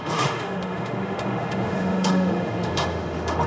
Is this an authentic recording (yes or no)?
no